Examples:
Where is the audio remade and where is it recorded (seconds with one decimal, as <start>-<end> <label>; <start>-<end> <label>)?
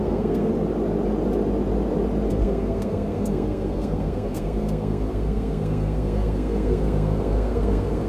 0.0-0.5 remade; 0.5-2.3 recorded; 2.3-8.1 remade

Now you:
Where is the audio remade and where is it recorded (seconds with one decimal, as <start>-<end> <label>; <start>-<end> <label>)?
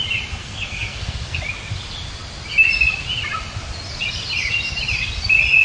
0.0-0.4 recorded; 0.4-1.4 remade; 1.4-5.6 recorded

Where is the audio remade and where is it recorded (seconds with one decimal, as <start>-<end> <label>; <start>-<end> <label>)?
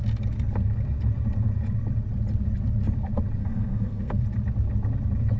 0.0-3.4 recorded; 3.4-4.2 remade; 4.2-5.4 recorded